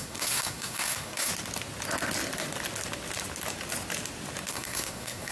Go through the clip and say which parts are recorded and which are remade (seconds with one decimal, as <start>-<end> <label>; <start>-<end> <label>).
0.0-1.3 remade; 1.3-4.5 recorded; 4.5-5.3 remade